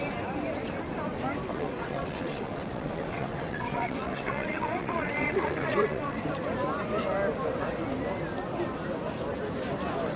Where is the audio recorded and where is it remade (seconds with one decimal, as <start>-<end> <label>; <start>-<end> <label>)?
0.0-1.5 recorded; 1.5-6.2 remade; 6.2-10.2 recorded

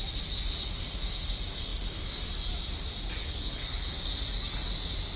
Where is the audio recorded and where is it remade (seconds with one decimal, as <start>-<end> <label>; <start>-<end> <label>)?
0.0-3.2 recorded; 3.2-3.9 remade; 3.9-5.2 recorded

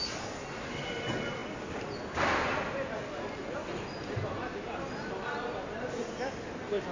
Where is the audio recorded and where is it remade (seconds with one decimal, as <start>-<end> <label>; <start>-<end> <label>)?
0.0-6.9 recorded

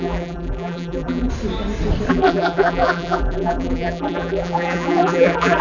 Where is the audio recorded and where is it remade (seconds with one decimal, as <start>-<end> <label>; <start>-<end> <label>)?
0.0-1.3 remade; 1.3-2.1 recorded; 2.1-5.6 remade

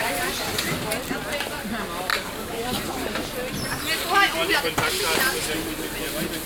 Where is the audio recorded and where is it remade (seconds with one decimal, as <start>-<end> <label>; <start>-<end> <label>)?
0.0-2.1 recorded; 2.1-2.7 remade; 2.7-6.5 recorded

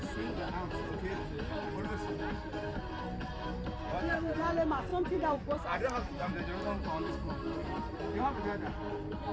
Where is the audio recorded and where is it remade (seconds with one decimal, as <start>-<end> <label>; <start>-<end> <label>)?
0.0-4.9 recorded; 4.9-6.3 remade; 6.3-9.3 recorded